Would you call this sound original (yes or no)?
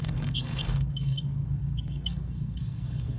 no